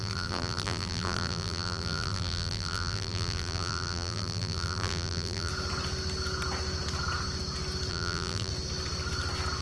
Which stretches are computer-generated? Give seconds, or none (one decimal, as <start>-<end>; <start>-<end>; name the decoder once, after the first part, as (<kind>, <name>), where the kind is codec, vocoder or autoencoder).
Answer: 0.0-5.5 (vocoder, BigVGAN v2); 7.9-8.5